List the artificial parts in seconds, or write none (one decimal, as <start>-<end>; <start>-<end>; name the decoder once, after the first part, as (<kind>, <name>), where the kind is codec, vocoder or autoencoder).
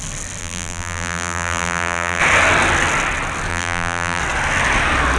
0.4-2.2 (vocoder, BigVGAN v2); 3.5-4.2